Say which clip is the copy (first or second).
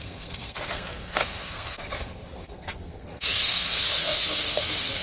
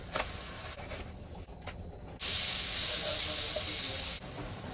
first